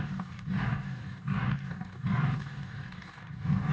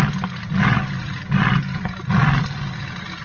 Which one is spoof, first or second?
first